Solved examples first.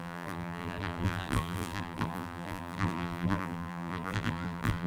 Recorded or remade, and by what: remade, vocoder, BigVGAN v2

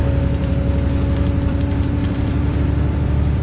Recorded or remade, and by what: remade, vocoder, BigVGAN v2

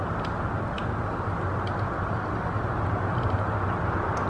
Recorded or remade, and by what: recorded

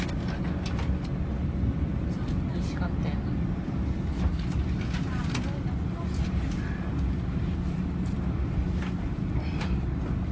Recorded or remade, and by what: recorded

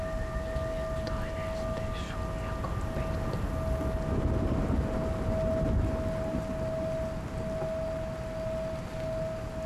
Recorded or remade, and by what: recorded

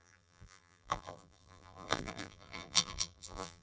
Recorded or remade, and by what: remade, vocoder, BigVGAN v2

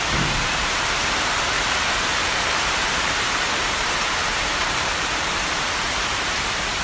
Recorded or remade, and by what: remade, vocoder, BigVGAN v2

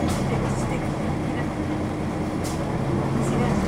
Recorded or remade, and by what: recorded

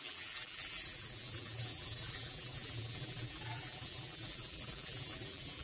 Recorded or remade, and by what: remade, vocoder, BigVGAN v2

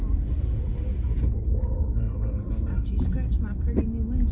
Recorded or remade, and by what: recorded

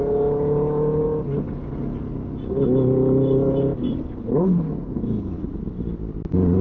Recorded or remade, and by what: recorded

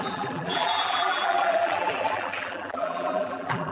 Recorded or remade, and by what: remade, vocoder, BigVGAN v2